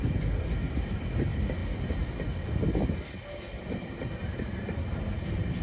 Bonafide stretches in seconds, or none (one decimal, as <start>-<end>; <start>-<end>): 0.0-4.2